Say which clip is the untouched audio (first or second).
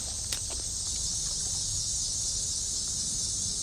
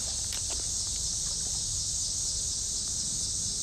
second